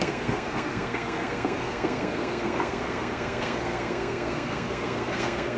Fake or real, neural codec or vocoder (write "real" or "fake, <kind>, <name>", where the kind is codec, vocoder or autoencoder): fake, codec, SNAC